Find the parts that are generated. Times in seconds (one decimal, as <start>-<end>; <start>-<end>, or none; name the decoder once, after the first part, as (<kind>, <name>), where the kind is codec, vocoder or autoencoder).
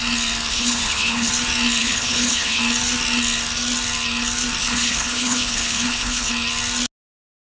0.5-1.3 (codec, HILCodec); 1.8-2.6; 4.6-6.3